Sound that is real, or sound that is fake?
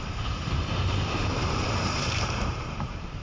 fake